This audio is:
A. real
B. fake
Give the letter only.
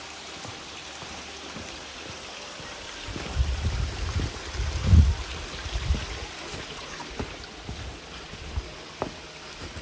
A